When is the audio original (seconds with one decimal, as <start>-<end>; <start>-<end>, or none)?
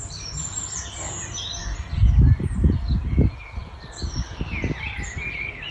0.0-5.7